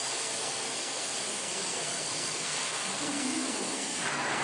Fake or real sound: fake